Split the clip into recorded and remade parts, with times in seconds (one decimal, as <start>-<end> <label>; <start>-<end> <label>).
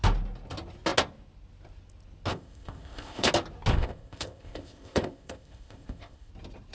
0.0-2.3 recorded; 2.3-3.3 remade; 3.3-3.7 recorded; 3.7-6.3 remade; 6.3-6.7 recorded